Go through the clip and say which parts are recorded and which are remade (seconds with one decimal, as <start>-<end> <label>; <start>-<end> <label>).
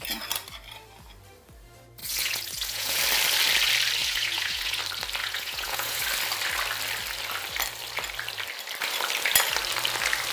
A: 0.0-2.0 recorded; 2.0-3.0 remade; 3.0-4.0 recorded; 4.0-4.8 remade; 4.8-5.2 recorded; 5.2-6.0 remade; 6.0-10.3 recorded